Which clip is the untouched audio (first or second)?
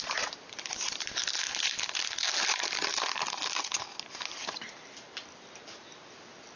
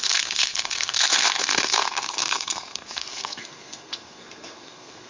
first